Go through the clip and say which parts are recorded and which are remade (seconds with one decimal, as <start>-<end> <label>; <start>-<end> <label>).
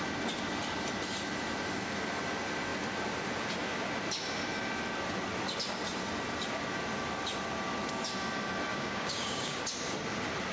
0.0-8.7 recorded; 8.7-9.6 remade; 9.6-10.5 recorded